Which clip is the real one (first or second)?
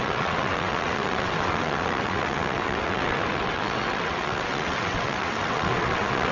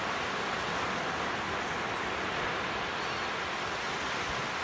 second